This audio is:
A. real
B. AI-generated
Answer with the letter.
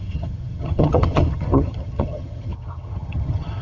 B